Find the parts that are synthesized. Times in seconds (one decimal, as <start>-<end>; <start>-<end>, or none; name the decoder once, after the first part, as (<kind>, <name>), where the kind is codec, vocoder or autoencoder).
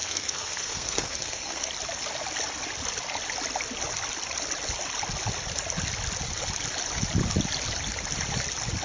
0.0-1.7 (codec, SNAC)